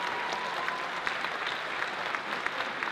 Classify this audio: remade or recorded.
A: recorded